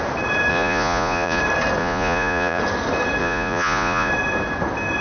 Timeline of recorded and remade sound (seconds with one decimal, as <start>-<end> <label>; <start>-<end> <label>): 0.0-0.5 recorded; 0.5-1.4 remade; 1.4-1.8 recorded; 1.8-2.6 remade; 2.6-3.2 recorded; 3.2-4.1 remade; 4.1-5.0 recorded

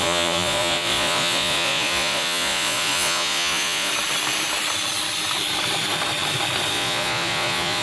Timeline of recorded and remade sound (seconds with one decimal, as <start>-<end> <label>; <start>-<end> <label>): 0.0-3.9 remade; 3.9-6.7 recorded; 6.7-7.8 remade

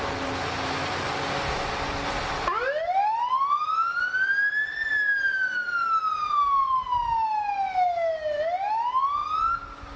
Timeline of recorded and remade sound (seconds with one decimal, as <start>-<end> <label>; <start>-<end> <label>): 0.0-10.0 recorded

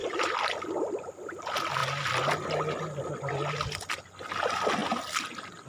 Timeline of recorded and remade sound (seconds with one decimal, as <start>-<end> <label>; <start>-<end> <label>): 0.0-5.7 recorded

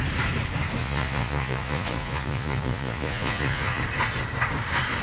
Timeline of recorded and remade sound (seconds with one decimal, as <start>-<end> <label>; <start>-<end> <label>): 0.0-0.8 recorded; 0.8-3.8 remade; 3.8-5.0 recorded

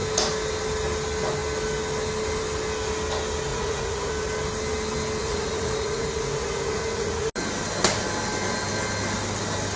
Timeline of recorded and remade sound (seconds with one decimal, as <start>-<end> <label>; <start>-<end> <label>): 0.0-3.5 recorded; 3.5-4.1 remade; 4.1-5.2 recorded; 5.2-7.3 remade; 7.3-9.8 recorded

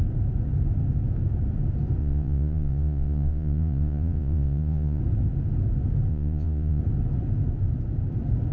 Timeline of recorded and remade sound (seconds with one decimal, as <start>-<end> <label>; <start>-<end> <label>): 0.0-2.0 recorded; 2.0-5.0 remade; 5.0-6.1 recorded; 6.1-6.8 remade; 6.8-8.5 recorded